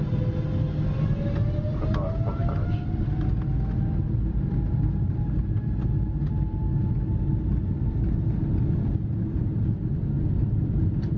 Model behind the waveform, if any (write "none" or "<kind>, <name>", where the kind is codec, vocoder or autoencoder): none